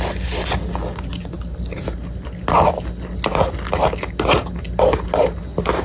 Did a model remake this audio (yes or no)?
no